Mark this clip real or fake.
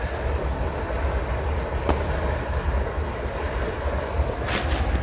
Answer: real